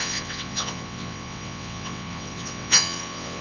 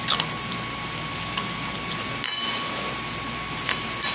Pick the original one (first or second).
second